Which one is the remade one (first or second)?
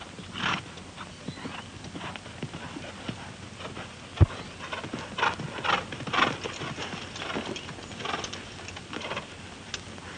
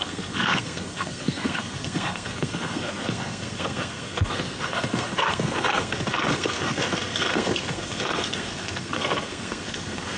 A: second